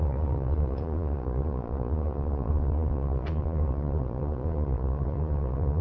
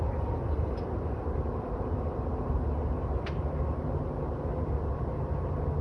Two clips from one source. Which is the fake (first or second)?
first